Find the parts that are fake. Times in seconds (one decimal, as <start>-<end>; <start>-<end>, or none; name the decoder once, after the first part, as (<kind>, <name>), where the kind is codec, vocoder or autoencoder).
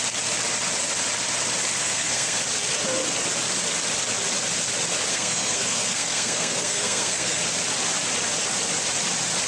1.8-2.4 (codec, SNAC); 5.1-7.4